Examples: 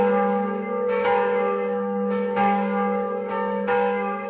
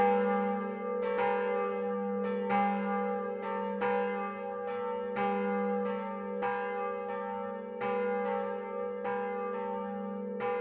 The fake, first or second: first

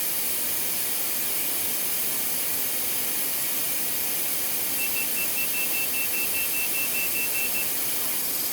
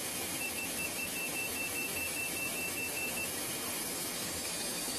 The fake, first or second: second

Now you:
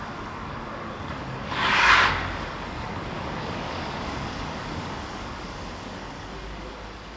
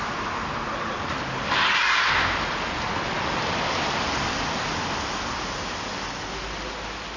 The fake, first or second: first